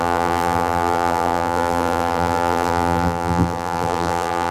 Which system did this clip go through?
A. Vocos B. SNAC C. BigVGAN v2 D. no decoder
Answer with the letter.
C